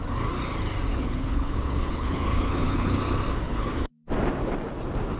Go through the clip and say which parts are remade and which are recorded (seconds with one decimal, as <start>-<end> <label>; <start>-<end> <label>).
0.0-0.9 recorded; 0.9-3.0 remade; 3.0-3.4 recorded; 3.4-3.9 remade; 3.9-5.2 recorded